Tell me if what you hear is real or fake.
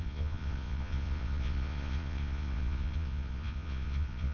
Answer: fake